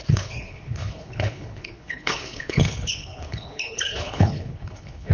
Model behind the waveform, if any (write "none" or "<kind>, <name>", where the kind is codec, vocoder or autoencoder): codec, HILCodec